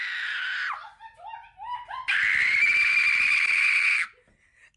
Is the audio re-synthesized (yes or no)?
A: no